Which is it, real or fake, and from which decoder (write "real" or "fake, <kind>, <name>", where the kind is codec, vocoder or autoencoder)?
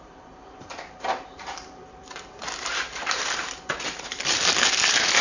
fake, vocoder, BigVGAN v2